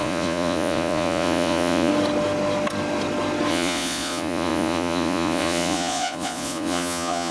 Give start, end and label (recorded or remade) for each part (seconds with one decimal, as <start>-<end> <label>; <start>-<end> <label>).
0.0-1.9 remade; 1.9-3.5 recorded; 3.5-7.3 remade